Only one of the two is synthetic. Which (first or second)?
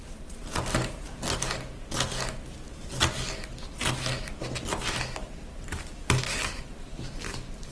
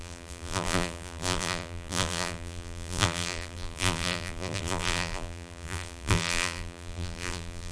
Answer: second